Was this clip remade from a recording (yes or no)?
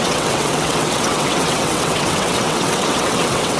yes